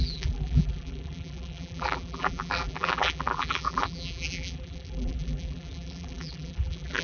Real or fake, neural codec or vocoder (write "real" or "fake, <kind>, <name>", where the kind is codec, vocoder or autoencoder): fake, vocoder, BigVGAN v2